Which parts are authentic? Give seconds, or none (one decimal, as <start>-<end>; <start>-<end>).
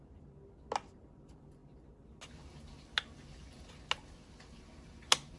0.0-5.4